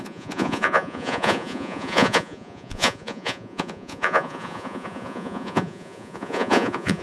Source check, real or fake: fake